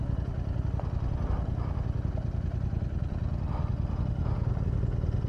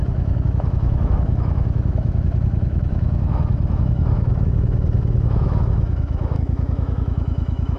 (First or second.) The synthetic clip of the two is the second